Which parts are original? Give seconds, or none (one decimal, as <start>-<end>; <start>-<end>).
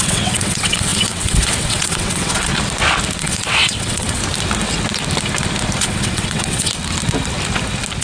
2.5-3.2; 4.2-5.8; 6.7-8.0